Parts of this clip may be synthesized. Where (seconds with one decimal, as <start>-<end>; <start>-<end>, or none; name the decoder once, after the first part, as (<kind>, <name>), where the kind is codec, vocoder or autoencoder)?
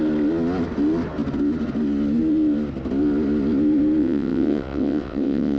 4.0-5.6 (vocoder, WaveNeXt)